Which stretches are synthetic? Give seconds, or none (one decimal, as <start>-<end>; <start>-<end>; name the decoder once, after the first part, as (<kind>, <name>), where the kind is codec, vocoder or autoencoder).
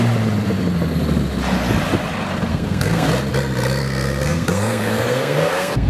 2.5-3.1 (codec, SNAC); 3.8-5.9